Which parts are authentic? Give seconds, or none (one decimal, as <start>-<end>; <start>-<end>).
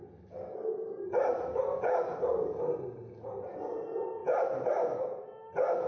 0.0-5.9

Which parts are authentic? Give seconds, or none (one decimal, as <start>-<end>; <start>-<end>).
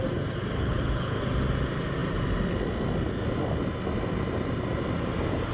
0.0-0.6; 1.2-5.5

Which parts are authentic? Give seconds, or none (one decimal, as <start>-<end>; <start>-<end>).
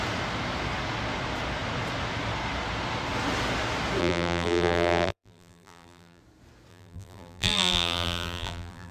0.0-4.0; 6.2-6.7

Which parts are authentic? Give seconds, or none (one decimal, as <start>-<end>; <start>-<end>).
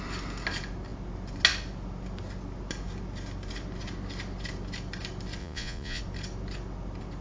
0.0-5.4; 6.0-7.2